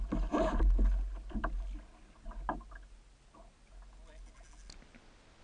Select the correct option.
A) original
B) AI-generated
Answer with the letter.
A